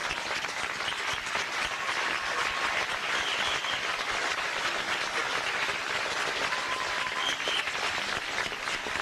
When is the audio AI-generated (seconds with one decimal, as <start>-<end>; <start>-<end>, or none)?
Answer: 0.8-9.0